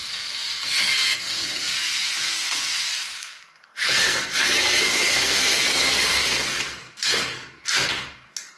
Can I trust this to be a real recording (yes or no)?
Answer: no